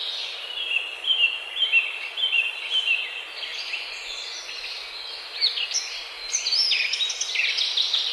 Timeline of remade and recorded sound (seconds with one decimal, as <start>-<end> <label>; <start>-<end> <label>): 0.0-8.1 recorded